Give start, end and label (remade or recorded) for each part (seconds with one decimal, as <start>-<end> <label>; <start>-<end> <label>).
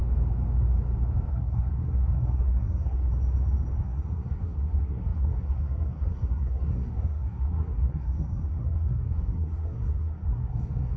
0.0-1.3 recorded; 1.3-3.1 remade; 3.1-3.8 recorded; 3.8-11.0 remade